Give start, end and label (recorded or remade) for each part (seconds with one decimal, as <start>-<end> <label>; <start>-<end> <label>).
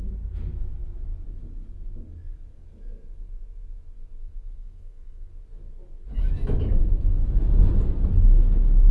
0.0-4.2 recorded; 4.2-5.3 remade; 5.3-8.9 recorded